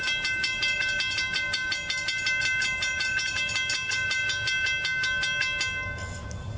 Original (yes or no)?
yes